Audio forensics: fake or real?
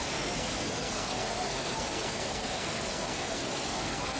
fake